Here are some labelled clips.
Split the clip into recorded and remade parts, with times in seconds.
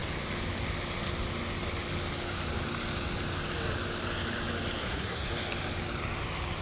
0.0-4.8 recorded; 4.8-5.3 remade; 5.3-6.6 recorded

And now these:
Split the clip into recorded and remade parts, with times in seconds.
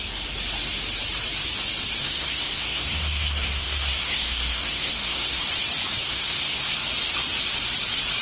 0.0-2.0 recorded; 2.0-5.4 remade; 5.4-6.0 recorded; 6.0-6.7 remade; 6.7-8.2 recorded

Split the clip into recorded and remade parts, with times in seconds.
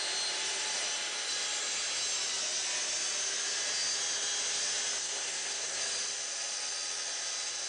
0.0-5.0 recorded; 5.0-5.8 remade; 5.8-7.7 recorded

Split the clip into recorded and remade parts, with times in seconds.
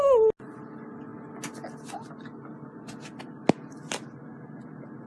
0.0-5.1 recorded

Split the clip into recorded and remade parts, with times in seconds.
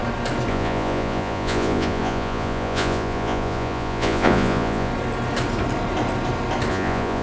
0.0-0.5 recorded; 0.5-4.9 remade; 4.9-6.7 recorded; 6.7-7.2 remade